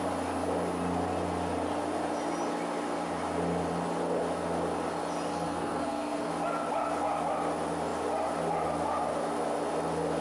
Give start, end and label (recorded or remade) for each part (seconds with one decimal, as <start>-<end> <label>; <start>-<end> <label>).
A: 0.0-5.3 recorded; 5.3-6.3 remade; 6.3-10.2 recorded